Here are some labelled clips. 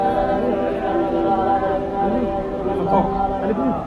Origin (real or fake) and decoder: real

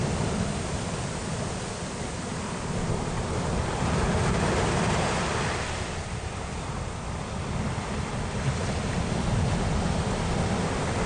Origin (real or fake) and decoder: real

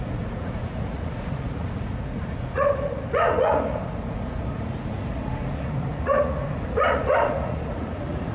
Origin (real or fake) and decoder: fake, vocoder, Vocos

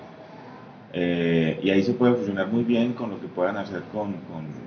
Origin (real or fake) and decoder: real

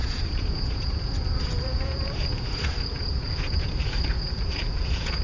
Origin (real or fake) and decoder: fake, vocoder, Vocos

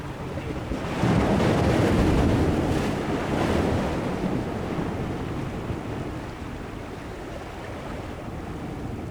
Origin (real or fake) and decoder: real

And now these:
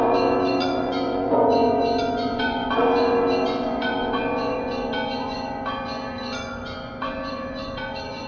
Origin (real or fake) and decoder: fake, vocoder, Vocos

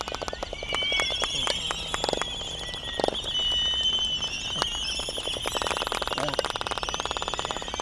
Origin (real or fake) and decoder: real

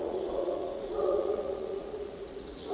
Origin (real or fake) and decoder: fake, vocoder, Vocos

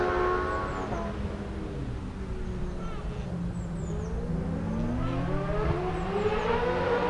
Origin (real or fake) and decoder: real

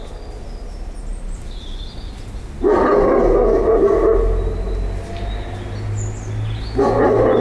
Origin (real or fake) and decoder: real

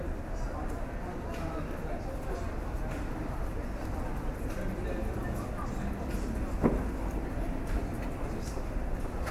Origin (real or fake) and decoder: real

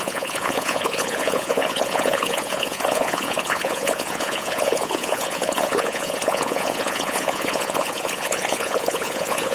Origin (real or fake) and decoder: fake, vocoder, Vocos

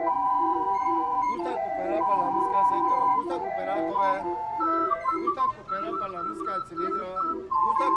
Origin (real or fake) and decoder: fake, vocoder, Vocos